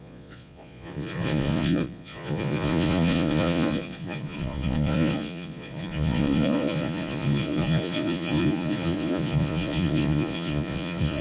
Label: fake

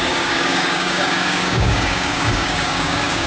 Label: fake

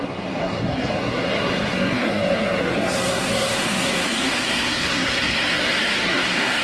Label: fake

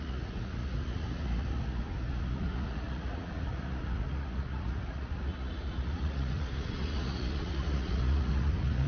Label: fake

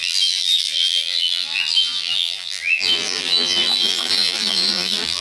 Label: fake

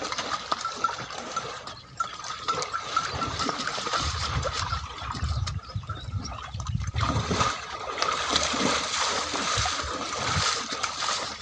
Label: fake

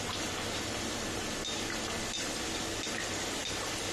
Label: real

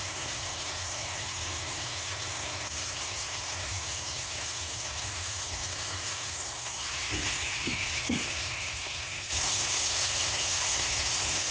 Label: fake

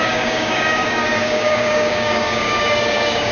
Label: fake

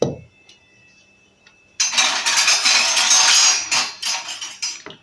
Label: real